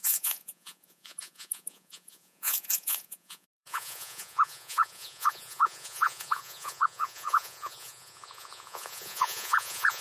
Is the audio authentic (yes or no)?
no